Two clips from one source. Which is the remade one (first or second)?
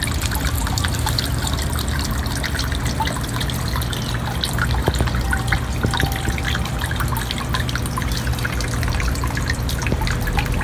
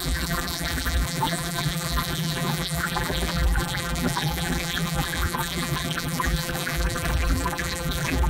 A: second